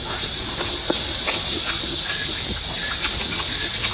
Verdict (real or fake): real